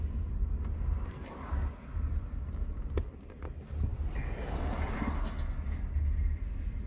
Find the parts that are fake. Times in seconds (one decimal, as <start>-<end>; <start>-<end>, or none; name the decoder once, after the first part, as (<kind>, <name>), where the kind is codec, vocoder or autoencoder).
none